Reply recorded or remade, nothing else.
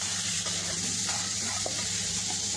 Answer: remade